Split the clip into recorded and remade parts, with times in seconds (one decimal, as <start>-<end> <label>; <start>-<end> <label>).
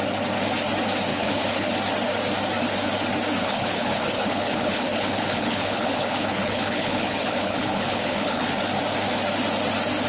0.0-1.1 recorded; 1.1-1.7 remade; 1.7-3.4 recorded; 3.4-8.6 remade; 8.6-10.1 recorded